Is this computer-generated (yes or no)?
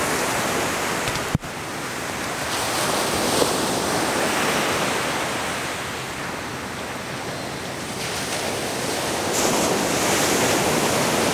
no